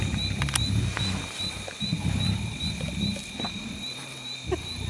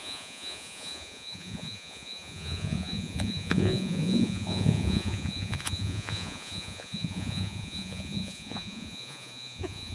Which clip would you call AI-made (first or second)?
second